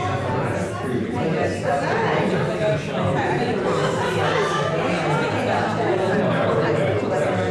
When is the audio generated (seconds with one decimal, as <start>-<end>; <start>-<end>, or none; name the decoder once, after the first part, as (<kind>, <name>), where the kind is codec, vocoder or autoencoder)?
none